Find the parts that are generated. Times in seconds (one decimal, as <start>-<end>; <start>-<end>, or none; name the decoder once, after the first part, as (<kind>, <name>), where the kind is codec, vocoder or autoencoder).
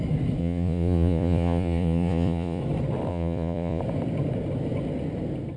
0.4-2.6 (vocoder, Vocos); 3.1-3.8